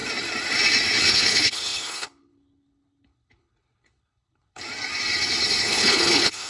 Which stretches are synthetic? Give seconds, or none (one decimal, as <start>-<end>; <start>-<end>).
1.1-4.6; 5.6-6.5